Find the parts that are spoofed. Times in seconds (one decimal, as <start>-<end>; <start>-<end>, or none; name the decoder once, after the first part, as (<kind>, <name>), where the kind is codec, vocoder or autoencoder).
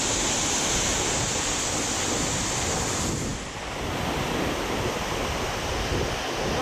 none